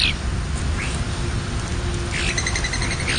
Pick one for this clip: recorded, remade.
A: recorded